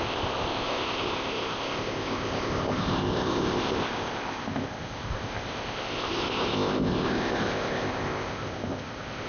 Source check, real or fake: fake